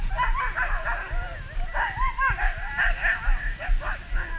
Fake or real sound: real